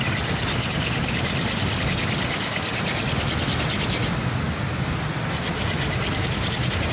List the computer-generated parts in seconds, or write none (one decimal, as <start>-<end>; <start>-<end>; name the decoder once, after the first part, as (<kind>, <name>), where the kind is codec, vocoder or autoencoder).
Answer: none